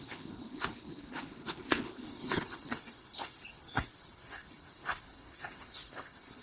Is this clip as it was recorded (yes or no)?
no